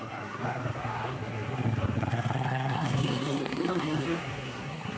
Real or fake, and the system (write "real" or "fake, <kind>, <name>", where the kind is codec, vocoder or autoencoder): fake, codec, SNAC